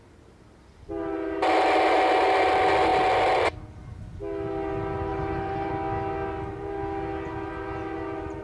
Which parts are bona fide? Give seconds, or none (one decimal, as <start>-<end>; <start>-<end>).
0.0-5.1; 5.7-8.4